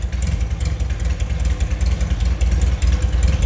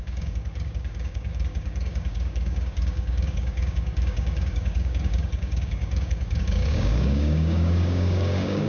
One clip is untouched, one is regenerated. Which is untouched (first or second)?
first